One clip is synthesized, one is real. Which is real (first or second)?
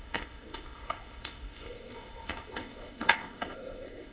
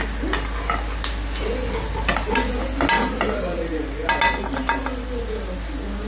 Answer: second